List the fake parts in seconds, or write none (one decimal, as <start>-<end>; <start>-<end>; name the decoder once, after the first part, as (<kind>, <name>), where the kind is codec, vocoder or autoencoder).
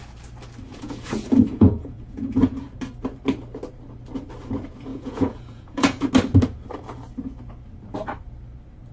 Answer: 0.7-2.5 (vocoder, Vocos); 4.9-6.1